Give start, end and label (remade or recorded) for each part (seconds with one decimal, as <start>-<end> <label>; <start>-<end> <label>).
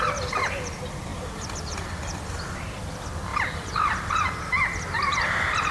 0.0-3.3 recorded; 3.3-4.1 remade; 4.1-5.7 recorded